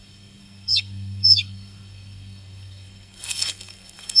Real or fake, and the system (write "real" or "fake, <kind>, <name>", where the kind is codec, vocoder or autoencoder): fake, codec, SNAC